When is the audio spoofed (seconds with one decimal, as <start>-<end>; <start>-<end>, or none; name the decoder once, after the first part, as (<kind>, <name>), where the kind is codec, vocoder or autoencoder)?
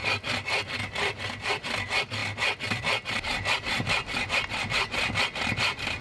none